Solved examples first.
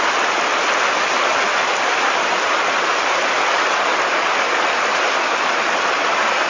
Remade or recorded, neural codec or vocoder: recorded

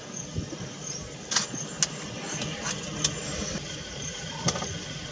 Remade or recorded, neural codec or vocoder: recorded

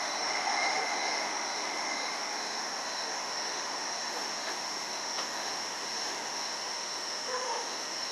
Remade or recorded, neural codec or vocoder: remade, autoencoder, DAC-VAE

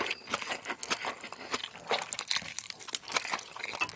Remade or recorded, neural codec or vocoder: recorded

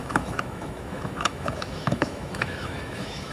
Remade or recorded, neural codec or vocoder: remade, autoencoder, DAC-VAE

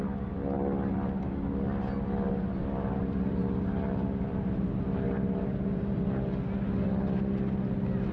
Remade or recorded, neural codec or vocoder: recorded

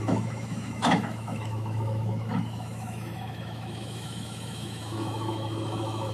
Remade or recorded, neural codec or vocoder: remade, autoencoder, DAC-VAE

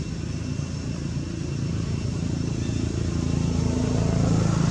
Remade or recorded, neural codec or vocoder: recorded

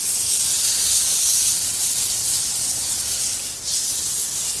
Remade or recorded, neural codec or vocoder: recorded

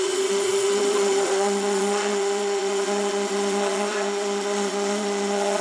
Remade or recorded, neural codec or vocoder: remade, vocoder, Vocos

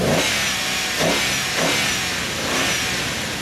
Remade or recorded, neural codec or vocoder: recorded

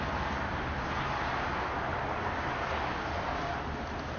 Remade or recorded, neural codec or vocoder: recorded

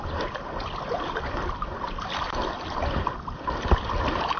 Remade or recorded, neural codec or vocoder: recorded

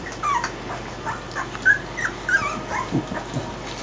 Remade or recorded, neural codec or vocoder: recorded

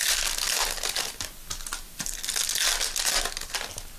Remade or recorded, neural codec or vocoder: recorded